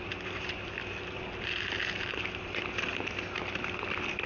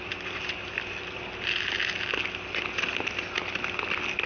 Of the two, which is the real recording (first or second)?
second